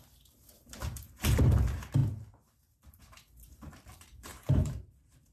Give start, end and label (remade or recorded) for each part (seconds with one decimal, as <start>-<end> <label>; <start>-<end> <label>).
0.0-5.3 remade